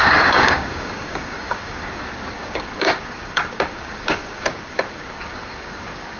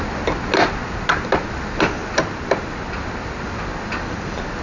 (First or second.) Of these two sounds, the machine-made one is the first